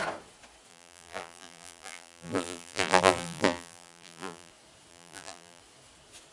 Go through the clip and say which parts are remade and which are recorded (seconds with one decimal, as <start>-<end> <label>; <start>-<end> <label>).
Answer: 0.0-0.7 recorded; 0.7-4.5 remade; 4.5-4.9 recorded; 4.9-5.6 remade; 5.6-6.3 recorded

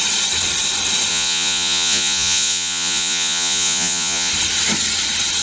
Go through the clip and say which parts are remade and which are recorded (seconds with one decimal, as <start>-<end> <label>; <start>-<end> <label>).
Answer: 0.0-1.1 recorded; 1.1-4.3 remade; 4.3-5.4 recorded